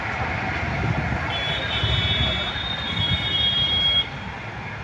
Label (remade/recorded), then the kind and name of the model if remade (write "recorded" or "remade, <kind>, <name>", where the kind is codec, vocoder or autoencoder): recorded